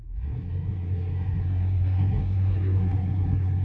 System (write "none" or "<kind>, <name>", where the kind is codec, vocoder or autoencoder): codec, SNAC